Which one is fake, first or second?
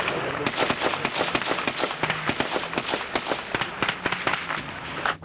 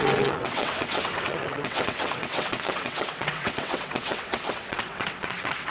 second